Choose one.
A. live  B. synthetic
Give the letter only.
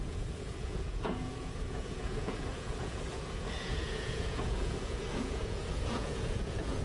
B